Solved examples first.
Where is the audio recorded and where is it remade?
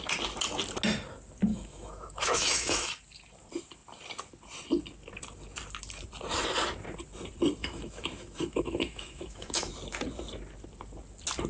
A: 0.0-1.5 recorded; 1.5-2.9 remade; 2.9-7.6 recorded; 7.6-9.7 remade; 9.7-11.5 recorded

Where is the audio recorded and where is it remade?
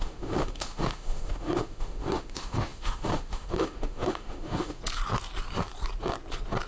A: 0.0-4.8 remade; 4.8-6.7 recorded